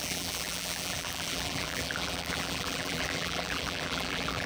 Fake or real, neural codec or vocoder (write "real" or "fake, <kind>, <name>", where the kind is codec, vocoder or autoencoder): fake, vocoder, BigVGAN v2